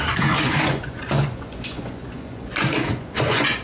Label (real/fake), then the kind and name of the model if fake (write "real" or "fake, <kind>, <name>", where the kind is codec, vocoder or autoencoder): fake, vocoder, Vocos